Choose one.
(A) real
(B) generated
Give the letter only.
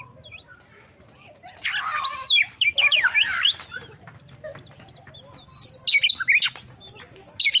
A